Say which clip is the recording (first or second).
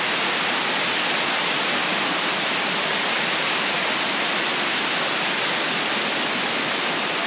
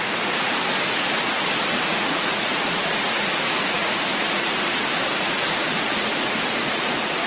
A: first